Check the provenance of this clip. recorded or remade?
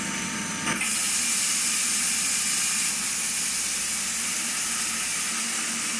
recorded